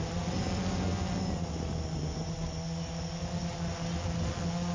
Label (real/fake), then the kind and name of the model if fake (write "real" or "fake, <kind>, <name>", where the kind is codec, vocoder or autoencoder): real